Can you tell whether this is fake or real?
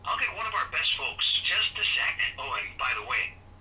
real